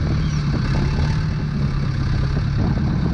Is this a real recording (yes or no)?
yes